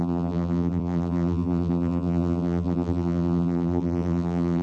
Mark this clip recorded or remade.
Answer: remade